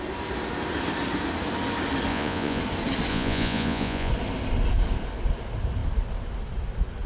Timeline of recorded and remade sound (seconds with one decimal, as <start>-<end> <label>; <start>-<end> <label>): 0.0-2.1 recorded; 2.1-2.6 remade; 2.6-3.1 recorded; 3.1-4.1 remade; 4.1-7.1 recorded

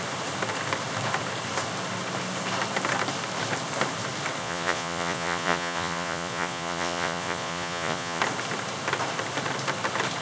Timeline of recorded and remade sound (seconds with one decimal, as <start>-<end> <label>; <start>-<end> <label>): 0.0-4.4 recorded; 4.4-8.2 remade; 8.2-10.2 recorded

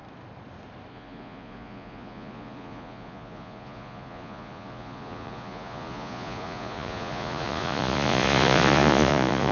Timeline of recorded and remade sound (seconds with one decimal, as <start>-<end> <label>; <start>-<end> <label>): 0.0-0.9 recorded; 0.9-9.5 remade

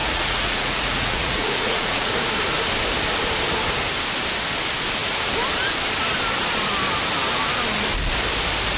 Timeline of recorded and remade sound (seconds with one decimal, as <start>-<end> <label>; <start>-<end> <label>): 0.0-2.1 remade; 2.1-8.8 recorded